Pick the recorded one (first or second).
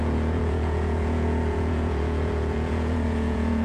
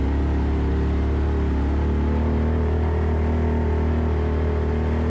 second